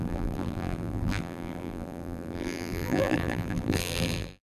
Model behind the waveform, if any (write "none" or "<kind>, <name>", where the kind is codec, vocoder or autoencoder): vocoder, BigVGAN v2